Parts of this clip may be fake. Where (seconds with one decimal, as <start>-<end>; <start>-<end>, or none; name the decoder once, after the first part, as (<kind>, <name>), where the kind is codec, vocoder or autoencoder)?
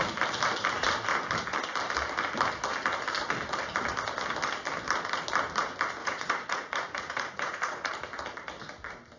6.0-7.9 (vocoder, Vocos)